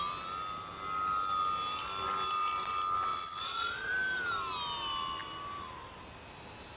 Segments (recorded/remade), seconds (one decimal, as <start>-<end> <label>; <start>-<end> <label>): 0.0-3.1 recorded; 3.1-3.9 remade; 3.9-6.8 recorded

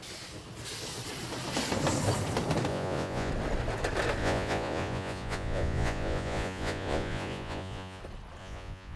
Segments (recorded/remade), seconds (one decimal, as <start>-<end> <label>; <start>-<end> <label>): 0.0-2.7 recorded; 2.7-3.3 remade; 3.3-4.2 recorded; 4.2-8.0 remade; 8.0-8.4 recorded; 8.4-9.0 remade